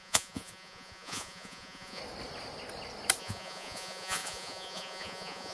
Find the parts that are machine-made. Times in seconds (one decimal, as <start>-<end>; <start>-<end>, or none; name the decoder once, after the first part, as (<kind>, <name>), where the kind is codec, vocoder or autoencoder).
0.0-2.0 (vocoder, Vocos); 3.2-5.5